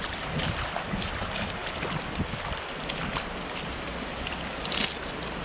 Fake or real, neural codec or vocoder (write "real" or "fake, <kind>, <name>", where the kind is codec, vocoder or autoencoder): real